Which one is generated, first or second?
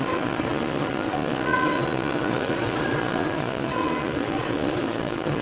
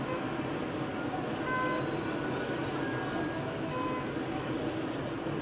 first